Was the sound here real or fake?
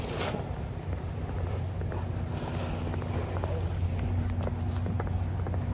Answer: real